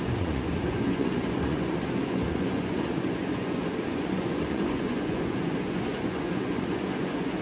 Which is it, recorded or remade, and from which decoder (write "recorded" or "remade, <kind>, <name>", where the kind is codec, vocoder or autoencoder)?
remade, vocoder, Vocos